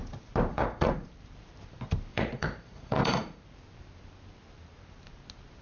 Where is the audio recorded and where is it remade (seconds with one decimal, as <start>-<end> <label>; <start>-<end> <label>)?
0.0-0.5 recorded; 0.5-1.1 remade; 1.1-2.1 recorded; 2.1-3.4 remade; 3.4-5.6 recorded